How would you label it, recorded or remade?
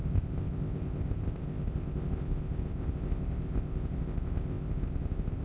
remade